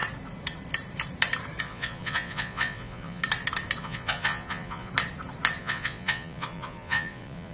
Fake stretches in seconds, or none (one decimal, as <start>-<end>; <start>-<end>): 1.6-3.2; 3.8-4.9; 5.6-7.5